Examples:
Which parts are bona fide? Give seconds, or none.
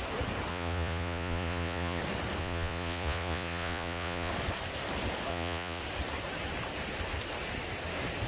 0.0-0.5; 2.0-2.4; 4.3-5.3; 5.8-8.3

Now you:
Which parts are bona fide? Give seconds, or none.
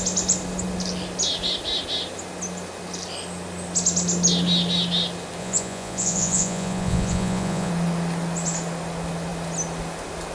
0.0-5.4; 7.7-10.3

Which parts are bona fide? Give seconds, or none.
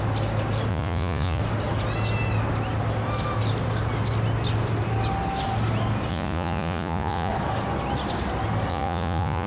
0.0-0.7; 1.4-6.1; 7.3-8.7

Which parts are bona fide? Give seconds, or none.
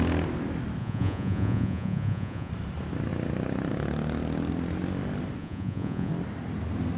0.0-0.8; 2.5-5.4; 6.1-7.0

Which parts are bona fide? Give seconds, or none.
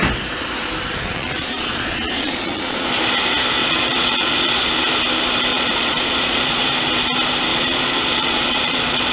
0.0-0.9; 2.9-3.6; 4.7-5.5; 6.7-7.5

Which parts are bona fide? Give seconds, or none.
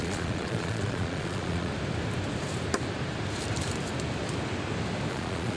1.7-5.1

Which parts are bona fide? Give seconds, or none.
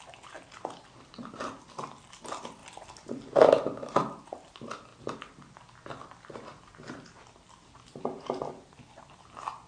0.0-9.7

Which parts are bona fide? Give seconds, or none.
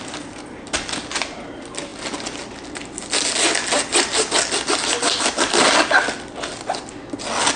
0.0-7.6